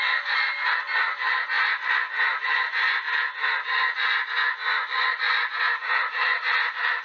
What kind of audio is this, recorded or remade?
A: recorded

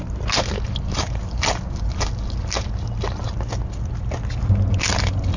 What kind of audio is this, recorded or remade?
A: recorded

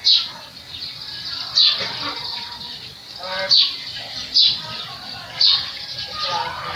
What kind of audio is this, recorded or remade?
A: recorded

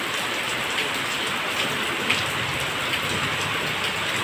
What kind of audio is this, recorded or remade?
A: remade